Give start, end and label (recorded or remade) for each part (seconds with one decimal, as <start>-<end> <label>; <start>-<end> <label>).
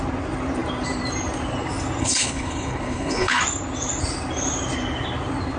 0.0-2.0 recorded; 2.0-3.4 remade; 3.4-5.6 recorded